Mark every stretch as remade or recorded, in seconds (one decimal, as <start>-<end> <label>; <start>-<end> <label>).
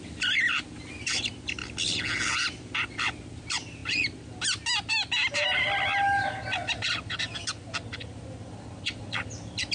0.0-1.6 remade; 1.6-2.3 recorded; 2.3-3.8 remade; 3.8-6.9 recorded; 6.9-9.7 remade